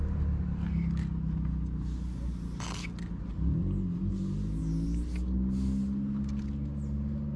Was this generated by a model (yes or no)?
no